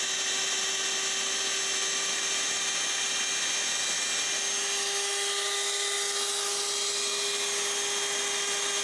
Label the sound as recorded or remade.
recorded